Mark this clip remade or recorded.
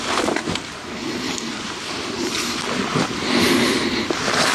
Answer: remade